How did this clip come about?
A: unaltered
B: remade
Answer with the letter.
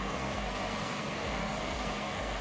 B